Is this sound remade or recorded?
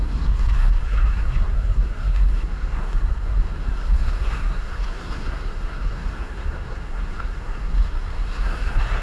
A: remade